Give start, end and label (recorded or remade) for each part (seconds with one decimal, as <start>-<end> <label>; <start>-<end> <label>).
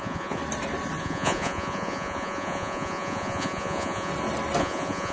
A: 0.0-0.4 remade; 0.4-1.0 recorded; 1.0-4.1 remade; 4.1-4.6 recorded; 4.6-5.1 remade